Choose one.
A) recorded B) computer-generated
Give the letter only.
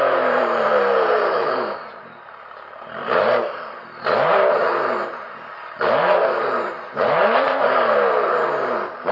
B